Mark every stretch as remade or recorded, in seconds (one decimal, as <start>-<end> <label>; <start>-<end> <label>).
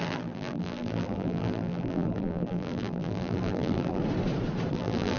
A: 0.0-4.0 remade; 4.0-4.7 recorded; 4.7-5.2 remade